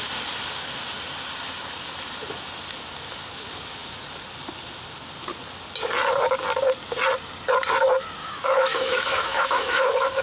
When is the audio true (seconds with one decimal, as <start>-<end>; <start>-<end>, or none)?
0.0-8.2